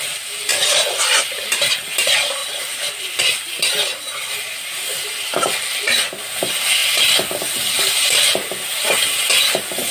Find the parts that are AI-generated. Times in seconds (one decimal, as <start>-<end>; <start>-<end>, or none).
none